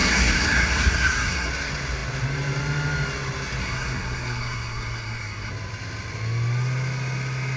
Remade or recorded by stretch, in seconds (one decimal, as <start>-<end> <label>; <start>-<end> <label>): 0.0-1.5 remade; 1.5-3.6 recorded; 3.6-5.5 remade; 5.5-7.6 recorded